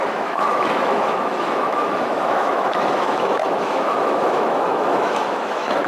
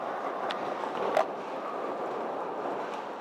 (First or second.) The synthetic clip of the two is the first